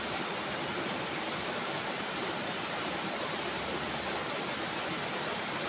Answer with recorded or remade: recorded